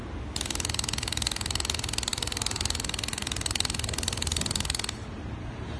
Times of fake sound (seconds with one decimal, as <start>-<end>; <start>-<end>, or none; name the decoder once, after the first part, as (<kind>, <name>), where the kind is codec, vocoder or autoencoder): none